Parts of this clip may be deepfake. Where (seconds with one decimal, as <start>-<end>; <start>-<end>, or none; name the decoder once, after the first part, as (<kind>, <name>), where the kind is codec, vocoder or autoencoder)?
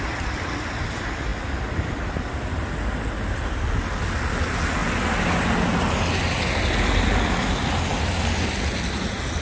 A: none